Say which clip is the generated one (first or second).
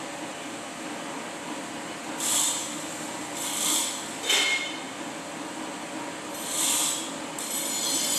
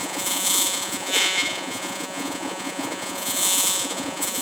second